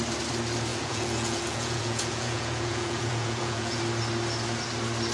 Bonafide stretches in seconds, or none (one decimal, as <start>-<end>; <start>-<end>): 0.0-0.7; 3.8-5.1